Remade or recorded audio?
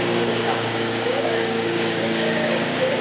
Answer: remade